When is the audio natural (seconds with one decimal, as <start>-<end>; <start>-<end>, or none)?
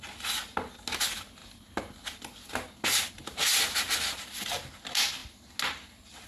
0.0-6.3